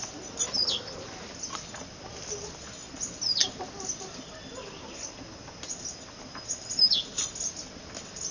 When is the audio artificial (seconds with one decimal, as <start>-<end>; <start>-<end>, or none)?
none